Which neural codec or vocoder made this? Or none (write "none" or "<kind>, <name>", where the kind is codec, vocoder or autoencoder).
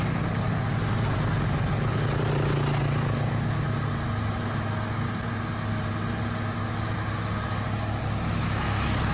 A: none